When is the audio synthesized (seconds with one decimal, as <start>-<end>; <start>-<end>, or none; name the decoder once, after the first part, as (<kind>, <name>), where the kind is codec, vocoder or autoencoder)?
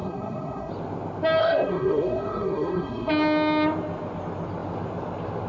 0.0-0.7 (codec, SNAC); 1.4-3.1